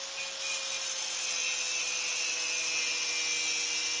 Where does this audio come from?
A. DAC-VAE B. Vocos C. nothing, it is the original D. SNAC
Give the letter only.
C